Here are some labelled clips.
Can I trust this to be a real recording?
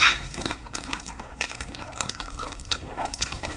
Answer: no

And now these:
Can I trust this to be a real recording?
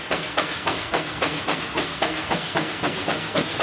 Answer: no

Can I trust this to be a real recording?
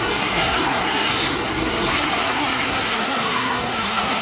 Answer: no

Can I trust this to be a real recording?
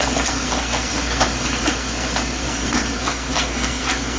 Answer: no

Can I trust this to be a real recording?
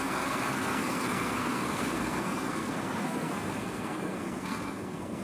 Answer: no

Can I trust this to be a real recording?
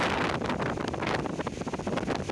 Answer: yes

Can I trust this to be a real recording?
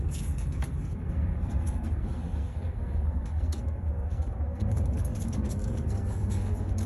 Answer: no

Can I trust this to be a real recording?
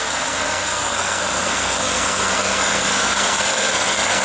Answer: no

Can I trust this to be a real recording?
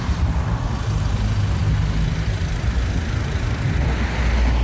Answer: yes